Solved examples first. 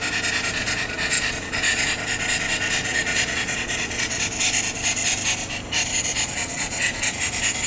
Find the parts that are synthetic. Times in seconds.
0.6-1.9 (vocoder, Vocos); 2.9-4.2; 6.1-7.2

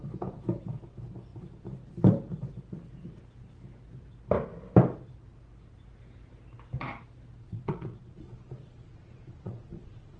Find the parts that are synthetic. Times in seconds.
7.4-10.2 (vocoder, Vocos)

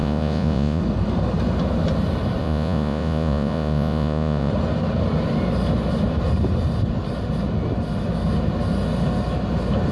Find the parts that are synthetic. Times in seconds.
0.0-0.8 (vocoder, Vocos); 2.4-4.5

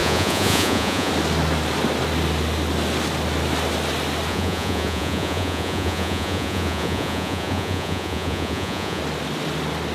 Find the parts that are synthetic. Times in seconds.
0.0-1.1 (vocoder, Vocos); 4.3-9.0

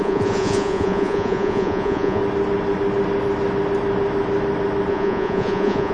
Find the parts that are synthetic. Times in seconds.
0.0-2.2 (vocoder, Vocos); 4.9-5.9

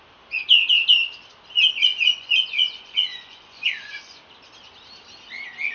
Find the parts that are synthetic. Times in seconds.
1.9-4.2 (vocoder, Vocos)